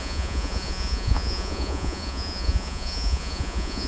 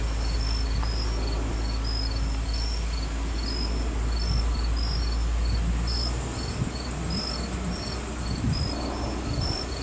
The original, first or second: second